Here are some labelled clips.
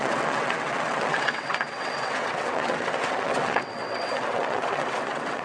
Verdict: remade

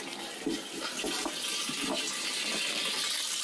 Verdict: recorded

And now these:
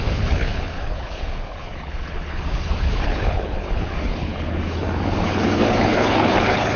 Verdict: remade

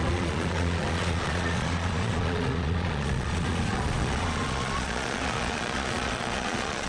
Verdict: remade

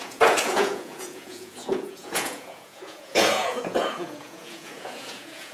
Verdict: remade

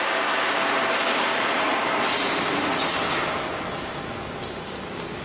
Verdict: recorded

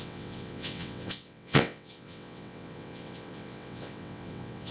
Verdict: remade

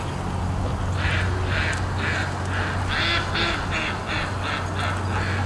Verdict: recorded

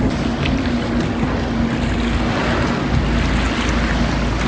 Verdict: recorded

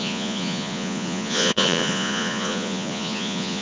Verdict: remade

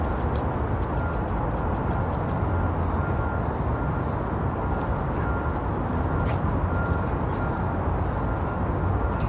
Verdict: recorded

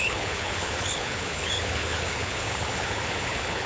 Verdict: remade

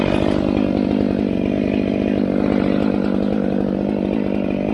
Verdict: recorded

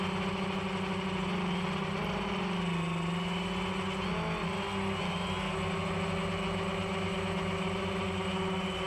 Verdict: recorded